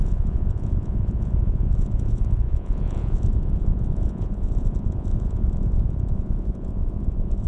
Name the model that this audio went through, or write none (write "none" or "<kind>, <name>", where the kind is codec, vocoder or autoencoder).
vocoder, Vocos